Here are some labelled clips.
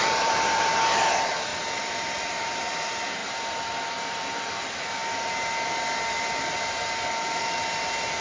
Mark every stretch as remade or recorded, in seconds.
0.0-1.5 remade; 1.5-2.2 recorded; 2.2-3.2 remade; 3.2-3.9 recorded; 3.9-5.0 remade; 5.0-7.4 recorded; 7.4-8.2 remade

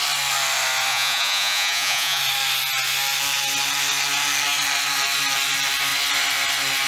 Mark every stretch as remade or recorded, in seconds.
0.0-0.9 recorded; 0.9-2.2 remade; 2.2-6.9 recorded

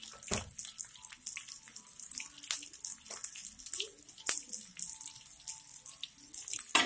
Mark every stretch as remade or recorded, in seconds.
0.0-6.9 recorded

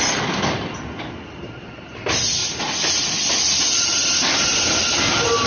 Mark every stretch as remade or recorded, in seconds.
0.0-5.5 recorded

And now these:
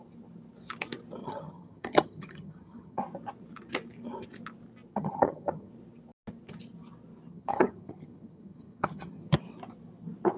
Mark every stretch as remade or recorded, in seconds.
0.0-1.2 recorded; 1.2-3.0 remade; 3.0-4.9 recorded; 4.9-5.7 remade; 5.7-7.3 recorded; 7.3-9.3 remade; 9.3-10.4 recorded

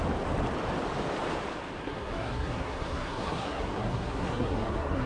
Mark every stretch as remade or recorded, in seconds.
0.0-1.8 recorded; 1.8-5.1 remade

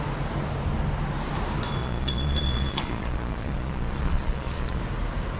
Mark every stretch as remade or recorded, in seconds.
0.0-1.8 recorded; 1.8-4.8 remade; 4.8-5.4 recorded